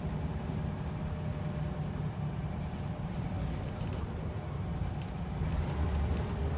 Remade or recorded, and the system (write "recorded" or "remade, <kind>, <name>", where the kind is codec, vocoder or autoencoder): recorded